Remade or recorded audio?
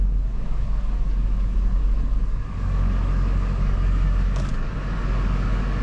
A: remade